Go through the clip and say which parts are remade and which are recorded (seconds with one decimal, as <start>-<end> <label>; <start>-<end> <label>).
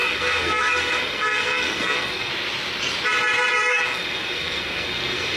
0.0-2.3 remade; 2.3-3.7 recorded; 3.7-5.4 remade